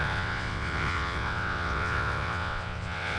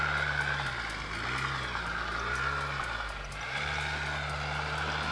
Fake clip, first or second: first